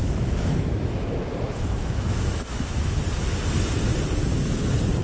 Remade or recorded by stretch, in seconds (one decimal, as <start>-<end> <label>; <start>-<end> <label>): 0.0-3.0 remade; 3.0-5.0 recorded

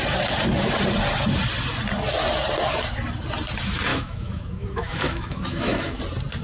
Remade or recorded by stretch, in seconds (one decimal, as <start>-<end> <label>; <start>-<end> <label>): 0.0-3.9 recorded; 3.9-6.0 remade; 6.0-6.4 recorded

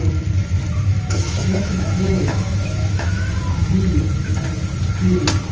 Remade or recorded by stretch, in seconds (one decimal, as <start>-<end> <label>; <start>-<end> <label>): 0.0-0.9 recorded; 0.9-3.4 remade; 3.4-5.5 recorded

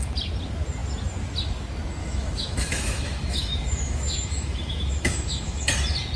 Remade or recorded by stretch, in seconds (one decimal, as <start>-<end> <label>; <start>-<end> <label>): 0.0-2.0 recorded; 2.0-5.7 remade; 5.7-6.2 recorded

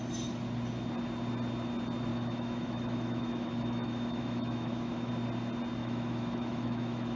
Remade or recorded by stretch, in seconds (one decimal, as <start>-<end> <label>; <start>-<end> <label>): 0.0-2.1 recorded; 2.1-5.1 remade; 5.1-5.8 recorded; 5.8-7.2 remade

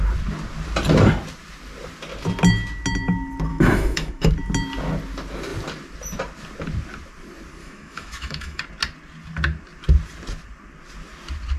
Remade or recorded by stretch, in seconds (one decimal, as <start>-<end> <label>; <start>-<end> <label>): 0.0-3.5 recorded; 3.5-4.3 remade; 4.3-7.6 recorded; 7.6-8.6 remade; 8.6-11.6 recorded